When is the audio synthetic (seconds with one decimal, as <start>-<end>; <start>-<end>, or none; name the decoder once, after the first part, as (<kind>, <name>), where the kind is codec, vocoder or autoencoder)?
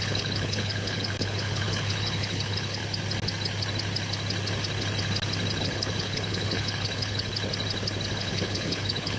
0.0-2.8 (codec, HILCodec); 5.6-7.3; 8.1-9.2